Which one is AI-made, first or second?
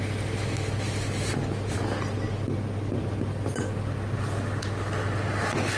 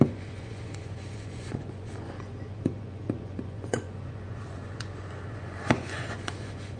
second